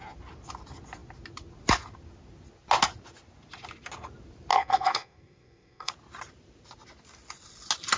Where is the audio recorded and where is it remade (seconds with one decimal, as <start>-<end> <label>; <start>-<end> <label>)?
0.0-4.5 recorded; 4.5-5.9 remade; 5.9-8.0 recorded